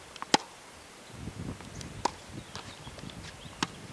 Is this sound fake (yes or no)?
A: no